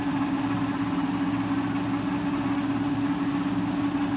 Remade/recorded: recorded